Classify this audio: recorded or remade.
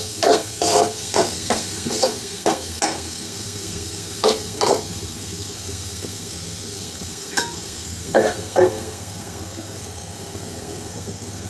remade